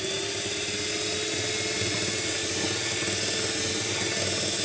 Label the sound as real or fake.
real